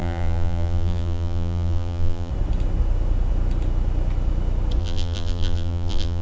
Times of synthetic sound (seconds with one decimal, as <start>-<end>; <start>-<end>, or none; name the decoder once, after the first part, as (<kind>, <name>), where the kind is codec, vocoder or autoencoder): 0.0-2.3 (vocoder, BigVGAN v2); 4.8-6.2